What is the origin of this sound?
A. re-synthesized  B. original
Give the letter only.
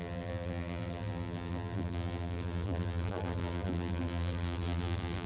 A